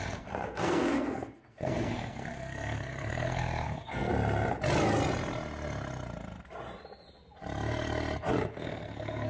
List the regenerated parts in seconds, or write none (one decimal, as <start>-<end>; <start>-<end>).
0.0-4.1; 8.5-9.3